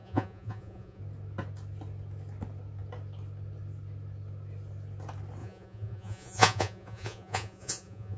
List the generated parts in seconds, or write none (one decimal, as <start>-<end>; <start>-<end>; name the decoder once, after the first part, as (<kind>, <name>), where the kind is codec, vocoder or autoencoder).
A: 0.0-1.0 (vocoder, Vocos); 5.4-8.2